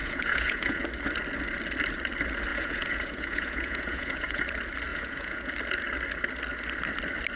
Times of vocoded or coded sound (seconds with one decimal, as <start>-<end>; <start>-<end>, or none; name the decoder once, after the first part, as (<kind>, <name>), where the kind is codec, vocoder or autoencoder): 0.0-0.9 (vocoder, Vocos); 2.5-4.4; 4.9-5.5